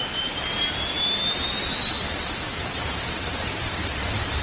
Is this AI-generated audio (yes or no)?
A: no